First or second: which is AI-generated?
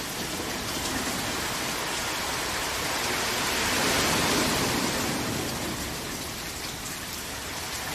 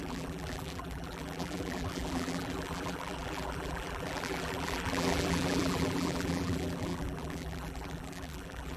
second